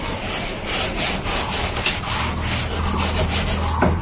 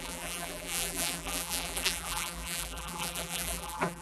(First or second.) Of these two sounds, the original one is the first